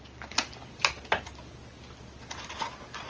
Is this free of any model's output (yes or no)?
yes